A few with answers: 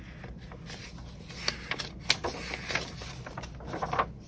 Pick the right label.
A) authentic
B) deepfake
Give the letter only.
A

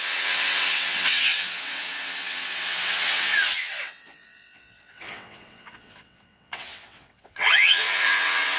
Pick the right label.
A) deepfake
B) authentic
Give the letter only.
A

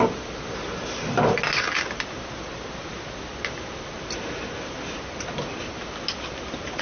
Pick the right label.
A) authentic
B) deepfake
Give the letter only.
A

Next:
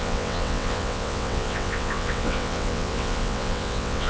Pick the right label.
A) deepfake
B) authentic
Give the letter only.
A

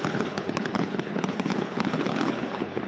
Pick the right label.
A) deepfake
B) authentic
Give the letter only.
A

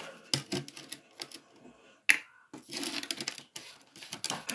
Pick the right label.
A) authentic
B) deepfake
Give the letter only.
A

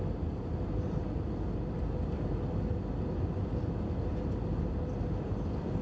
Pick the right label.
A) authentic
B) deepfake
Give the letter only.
A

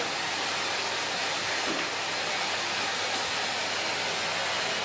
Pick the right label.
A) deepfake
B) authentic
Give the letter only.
B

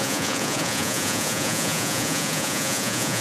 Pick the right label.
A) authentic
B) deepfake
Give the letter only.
B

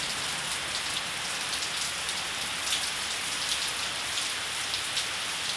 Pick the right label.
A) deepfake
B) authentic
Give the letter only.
B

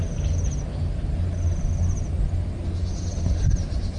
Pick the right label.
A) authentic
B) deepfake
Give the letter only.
A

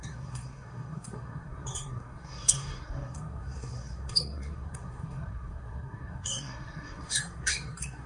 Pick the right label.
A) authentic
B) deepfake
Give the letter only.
B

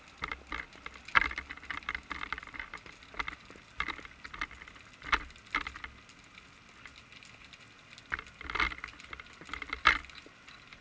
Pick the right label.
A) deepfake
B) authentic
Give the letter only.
B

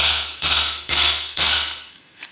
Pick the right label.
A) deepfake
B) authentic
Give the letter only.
A